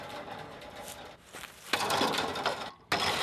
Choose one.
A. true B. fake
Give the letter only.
A